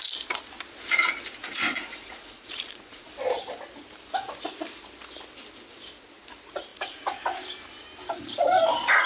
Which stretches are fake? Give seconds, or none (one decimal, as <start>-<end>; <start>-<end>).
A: 1.4-3.1; 6.7-7.2